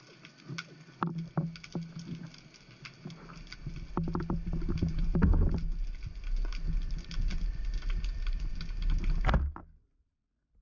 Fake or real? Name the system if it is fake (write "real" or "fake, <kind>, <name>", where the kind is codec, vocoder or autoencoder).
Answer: real